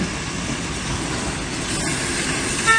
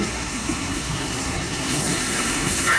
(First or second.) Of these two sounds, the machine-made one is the second